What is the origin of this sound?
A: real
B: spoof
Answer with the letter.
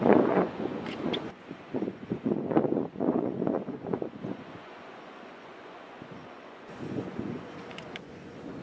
B